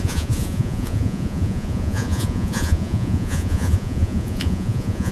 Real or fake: fake